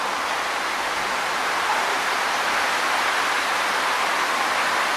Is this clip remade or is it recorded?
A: recorded